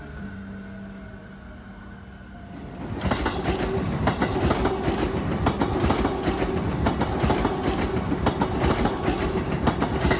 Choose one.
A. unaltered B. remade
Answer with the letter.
A